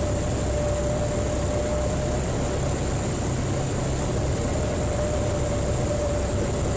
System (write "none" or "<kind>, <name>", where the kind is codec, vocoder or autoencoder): none